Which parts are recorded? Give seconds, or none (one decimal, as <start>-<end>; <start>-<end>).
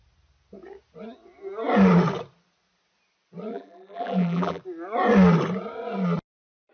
0.0-3.5; 4.6-6.7